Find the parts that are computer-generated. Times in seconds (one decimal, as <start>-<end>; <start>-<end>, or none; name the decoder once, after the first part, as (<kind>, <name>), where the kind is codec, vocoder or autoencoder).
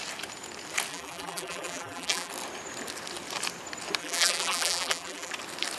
0.9-2.3 (vocoder, BigVGAN v2); 4.0-5.3